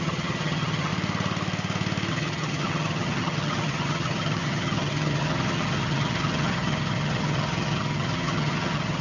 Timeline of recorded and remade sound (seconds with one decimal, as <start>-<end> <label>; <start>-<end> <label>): 0.0-0.9 remade; 0.9-2.1 recorded; 2.1-9.0 remade